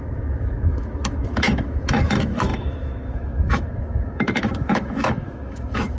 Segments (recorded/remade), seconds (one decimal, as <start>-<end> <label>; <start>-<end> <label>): 0.0-6.0 remade